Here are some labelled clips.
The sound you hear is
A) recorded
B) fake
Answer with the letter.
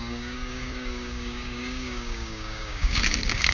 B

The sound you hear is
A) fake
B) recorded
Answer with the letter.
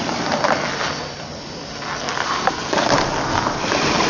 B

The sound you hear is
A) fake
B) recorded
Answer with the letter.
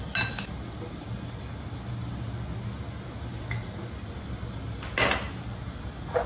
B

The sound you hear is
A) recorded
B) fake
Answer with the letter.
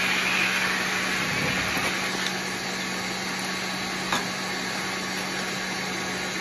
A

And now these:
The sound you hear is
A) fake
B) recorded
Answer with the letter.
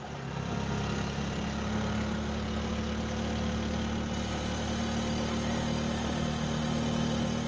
B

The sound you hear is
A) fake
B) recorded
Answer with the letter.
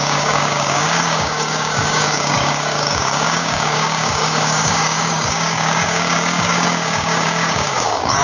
A